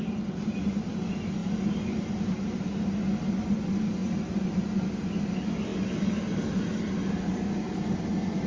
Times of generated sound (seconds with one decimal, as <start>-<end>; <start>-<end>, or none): none